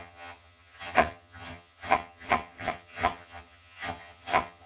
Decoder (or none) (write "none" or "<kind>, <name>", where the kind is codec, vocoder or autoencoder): vocoder, HiFi-GAN